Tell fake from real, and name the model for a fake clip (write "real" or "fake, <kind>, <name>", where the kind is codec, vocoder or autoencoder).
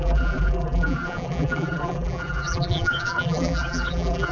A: fake, vocoder, BigVGAN v2